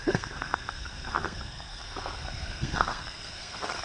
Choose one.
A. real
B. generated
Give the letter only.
B